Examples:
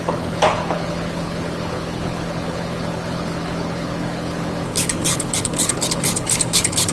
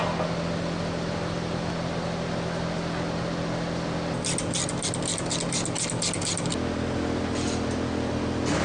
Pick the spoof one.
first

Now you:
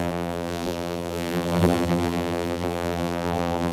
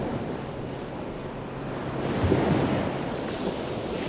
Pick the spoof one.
first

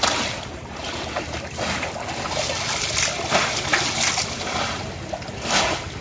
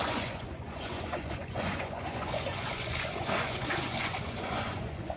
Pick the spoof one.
second